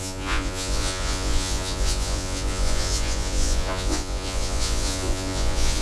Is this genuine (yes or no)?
no